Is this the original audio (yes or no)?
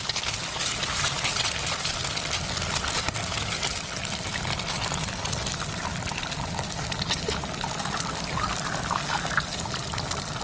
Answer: yes